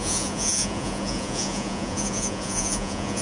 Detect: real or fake fake